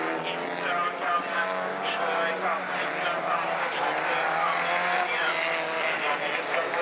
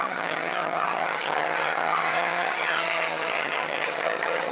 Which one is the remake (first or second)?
second